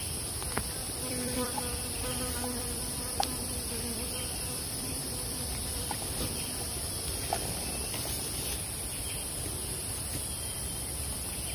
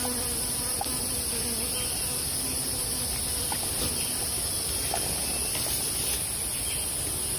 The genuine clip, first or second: second